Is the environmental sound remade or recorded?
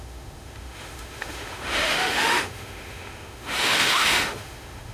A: remade